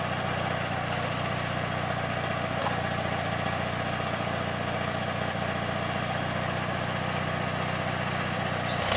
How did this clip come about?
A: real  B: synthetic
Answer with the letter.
A